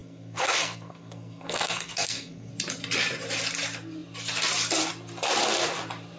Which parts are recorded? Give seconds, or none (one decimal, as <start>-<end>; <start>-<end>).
2.5-6.2